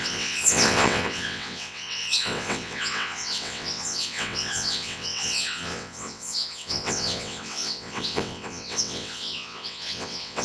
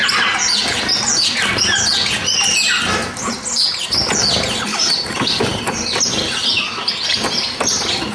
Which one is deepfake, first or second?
first